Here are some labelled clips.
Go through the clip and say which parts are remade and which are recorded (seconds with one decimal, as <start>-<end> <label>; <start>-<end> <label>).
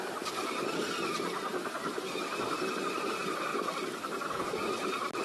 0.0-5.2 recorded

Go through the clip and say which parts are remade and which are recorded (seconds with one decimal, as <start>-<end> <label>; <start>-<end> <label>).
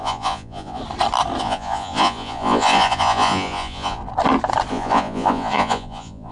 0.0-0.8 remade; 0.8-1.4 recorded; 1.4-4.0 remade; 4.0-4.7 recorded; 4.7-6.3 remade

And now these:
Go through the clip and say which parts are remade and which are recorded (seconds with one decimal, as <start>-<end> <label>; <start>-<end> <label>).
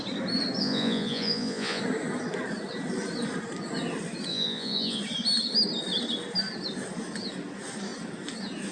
0.0-0.6 recorded; 0.6-1.8 remade; 1.8-4.3 recorded; 4.3-5.0 remade; 5.0-8.7 recorded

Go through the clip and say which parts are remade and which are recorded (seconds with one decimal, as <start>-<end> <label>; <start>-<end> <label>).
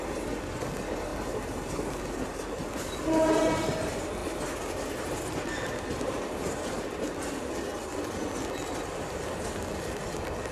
0.0-10.5 recorded